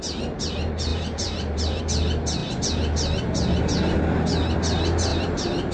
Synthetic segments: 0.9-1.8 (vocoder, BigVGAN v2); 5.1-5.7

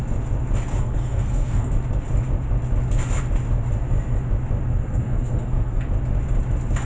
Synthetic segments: 0.7-1.7 (codec, SNAC); 4.7-5.8